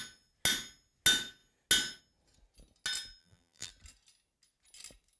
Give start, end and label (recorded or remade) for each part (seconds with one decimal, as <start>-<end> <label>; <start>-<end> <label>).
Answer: 0.0-3.2 recorded; 3.2-3.7 remade; 3.7-5.2 recorded